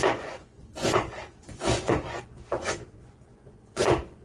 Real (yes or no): no